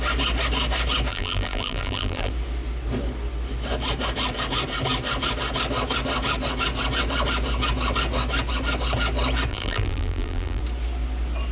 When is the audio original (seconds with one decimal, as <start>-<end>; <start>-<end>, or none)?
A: 0.0-1.1; 2.3-9.5; 10.6-11.5